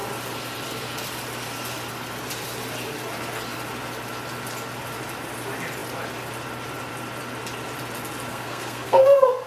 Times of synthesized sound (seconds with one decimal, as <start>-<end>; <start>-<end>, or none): 8.3-9.5